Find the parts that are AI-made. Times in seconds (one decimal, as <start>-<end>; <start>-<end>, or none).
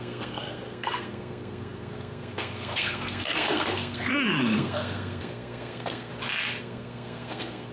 0.0-6.1; 6.6-7.7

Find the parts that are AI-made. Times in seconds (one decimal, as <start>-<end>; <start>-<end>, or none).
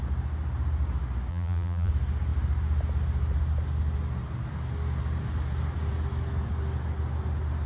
1.3-1.9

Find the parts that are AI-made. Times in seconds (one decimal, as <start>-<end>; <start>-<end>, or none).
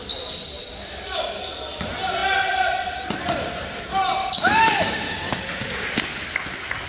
0.7-1.4; 4.2-5.4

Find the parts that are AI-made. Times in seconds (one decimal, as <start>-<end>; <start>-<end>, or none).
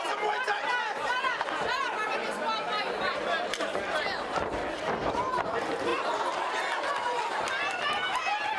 none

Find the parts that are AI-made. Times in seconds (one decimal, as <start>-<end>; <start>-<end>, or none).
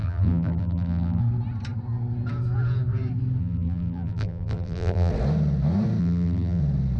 0.0-1.2; 3.4-5.1; 6.0-6.6